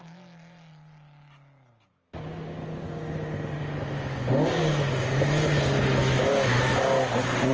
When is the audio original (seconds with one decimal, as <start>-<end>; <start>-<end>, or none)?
0.0-6.0; 6.8-7.5

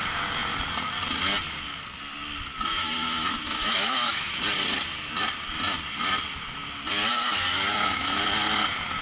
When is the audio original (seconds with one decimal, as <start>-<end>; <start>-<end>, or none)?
0.0-2.7; 4.4-7.1; 8.2-9.0

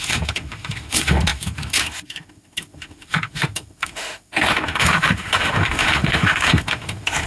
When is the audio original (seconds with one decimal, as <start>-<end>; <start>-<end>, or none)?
none

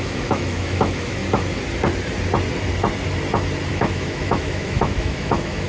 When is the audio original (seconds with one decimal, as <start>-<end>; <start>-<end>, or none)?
1.2-3.7

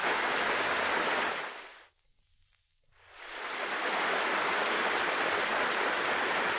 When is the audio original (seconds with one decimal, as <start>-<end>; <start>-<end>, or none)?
0.7-6.6

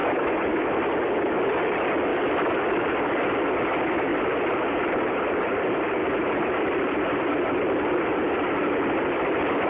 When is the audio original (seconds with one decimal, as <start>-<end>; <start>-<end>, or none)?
0.8-2.1; 2.7-9.7